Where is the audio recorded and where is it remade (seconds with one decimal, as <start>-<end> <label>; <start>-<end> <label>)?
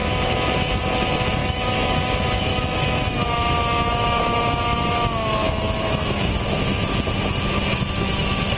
0.0-1.4 recorded; 1.4-2.0 remade; 2.0-2.5 recorded; 2.5-6.3 remade; 6.3-7.7 recorded; 7.7-8.6 remade